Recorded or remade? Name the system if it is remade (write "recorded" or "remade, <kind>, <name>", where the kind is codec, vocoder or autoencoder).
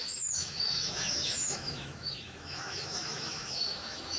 remade, autoencoder, DAC-VAE